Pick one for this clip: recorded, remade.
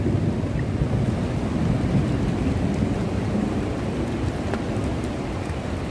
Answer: recorded